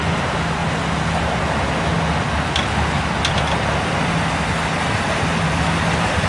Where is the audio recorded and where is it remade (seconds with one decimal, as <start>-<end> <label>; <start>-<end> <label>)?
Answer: 0.0-6.3 recorded